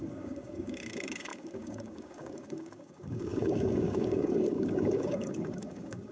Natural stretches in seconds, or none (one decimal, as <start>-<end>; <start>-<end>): none

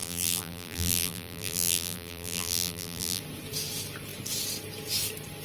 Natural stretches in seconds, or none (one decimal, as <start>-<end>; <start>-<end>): 3.2-5.4